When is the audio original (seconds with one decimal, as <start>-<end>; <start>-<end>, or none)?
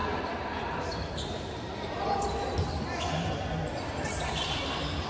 2.7-5.1